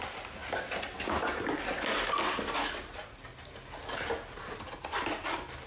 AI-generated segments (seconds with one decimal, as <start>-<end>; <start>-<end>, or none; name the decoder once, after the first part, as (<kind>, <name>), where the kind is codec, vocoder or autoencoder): none